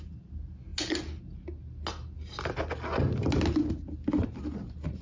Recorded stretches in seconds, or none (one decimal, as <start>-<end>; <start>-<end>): 0.0-5.0